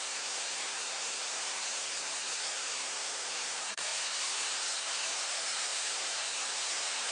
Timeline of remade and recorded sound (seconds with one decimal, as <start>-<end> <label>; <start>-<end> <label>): 0.0-7.1 remade